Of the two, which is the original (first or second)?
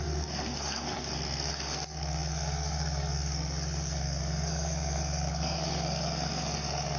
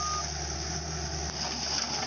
second